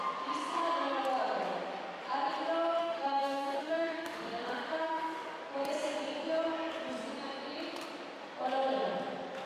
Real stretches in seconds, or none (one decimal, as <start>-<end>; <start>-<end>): 0.0-2.8; 5.4-9.5